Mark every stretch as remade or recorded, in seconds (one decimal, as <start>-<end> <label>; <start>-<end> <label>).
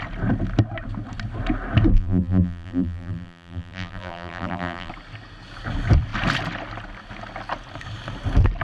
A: 0.0-1.9 recorded; 1.9-4.9 remade; 4.9-8.6 recorded